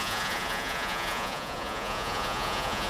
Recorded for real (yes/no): no